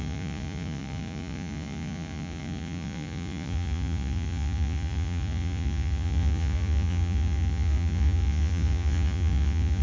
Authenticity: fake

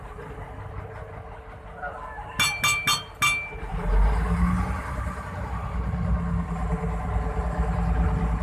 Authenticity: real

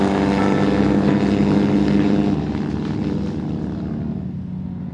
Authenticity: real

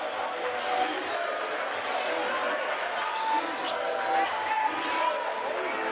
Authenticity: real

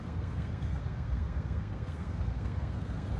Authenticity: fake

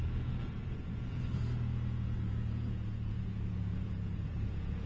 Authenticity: fake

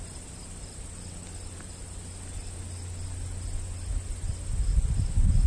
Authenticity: real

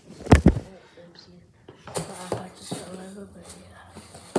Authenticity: real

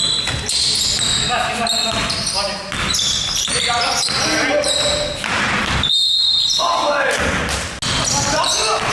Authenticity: real